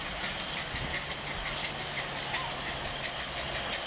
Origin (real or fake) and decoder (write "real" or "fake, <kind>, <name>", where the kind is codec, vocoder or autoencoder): real